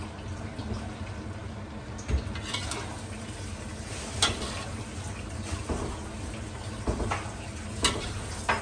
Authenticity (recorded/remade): recorded